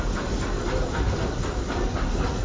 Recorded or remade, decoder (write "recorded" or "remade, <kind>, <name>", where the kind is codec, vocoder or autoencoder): recorded